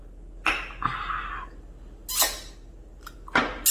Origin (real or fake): real